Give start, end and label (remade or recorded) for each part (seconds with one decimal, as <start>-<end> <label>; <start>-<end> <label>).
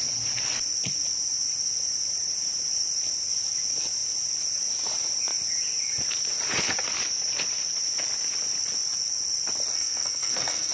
0.0-9.7 recorded; 9.7-10.7 remade